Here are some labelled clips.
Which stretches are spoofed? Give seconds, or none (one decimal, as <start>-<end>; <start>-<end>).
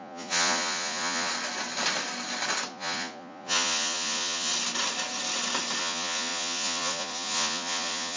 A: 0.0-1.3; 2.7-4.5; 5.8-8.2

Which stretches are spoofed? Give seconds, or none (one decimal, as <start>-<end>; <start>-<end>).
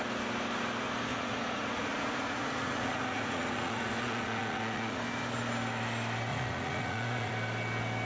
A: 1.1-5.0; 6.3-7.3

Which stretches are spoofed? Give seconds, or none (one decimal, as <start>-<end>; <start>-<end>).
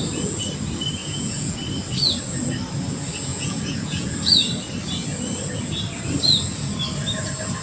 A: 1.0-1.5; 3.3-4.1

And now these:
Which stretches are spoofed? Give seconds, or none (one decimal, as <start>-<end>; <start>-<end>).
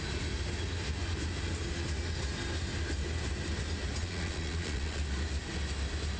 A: 4.0-5.0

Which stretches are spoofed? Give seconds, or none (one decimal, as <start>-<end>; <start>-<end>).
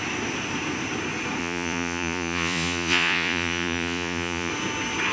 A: 1.4-4.5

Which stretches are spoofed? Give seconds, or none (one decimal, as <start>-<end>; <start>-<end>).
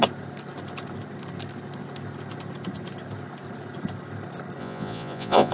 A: 4.6-5.5